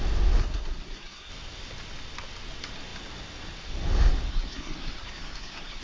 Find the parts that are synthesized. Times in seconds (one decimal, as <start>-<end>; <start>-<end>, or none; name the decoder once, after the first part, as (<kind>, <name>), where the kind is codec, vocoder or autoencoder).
0.4-1.3 (codec, SNAC); 4.3-5.8